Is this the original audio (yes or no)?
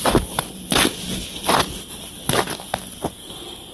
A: yes